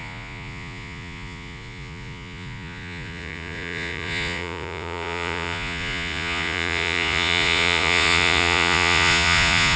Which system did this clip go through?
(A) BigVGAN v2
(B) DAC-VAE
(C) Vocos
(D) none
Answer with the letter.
C